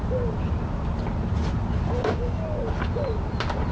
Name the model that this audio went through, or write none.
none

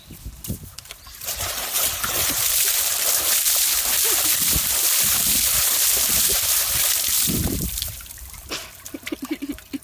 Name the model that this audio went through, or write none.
vocoder, BigVGAN v2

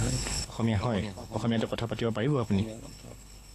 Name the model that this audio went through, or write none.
codec, HILCodec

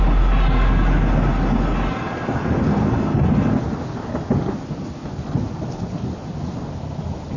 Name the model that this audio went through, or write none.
none